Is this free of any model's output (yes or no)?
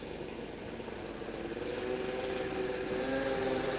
yes